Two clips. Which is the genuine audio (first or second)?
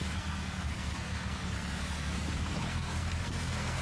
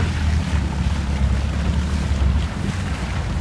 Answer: second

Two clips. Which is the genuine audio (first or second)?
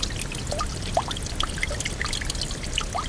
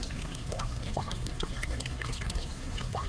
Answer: first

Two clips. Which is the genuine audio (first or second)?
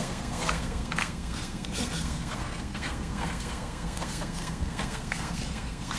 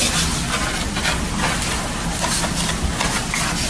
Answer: second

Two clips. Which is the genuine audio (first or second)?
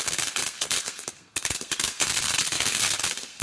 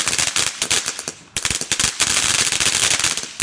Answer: second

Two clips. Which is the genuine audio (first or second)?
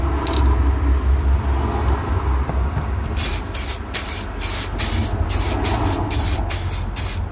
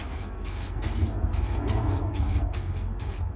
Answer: first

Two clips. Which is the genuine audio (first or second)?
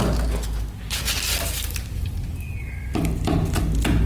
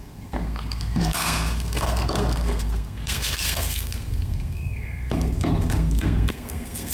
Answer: first